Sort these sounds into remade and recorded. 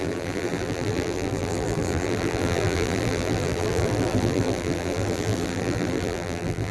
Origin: remade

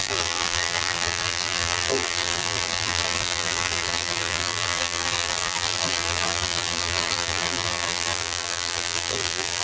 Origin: remade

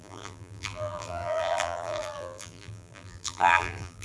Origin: remade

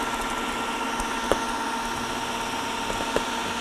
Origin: recorded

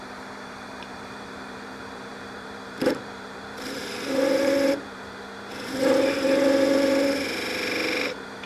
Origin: remade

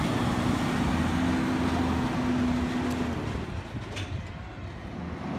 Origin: recorded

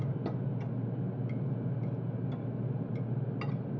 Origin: recorded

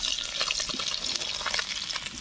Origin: recorded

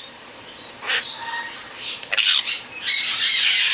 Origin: remade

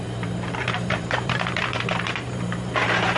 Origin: remade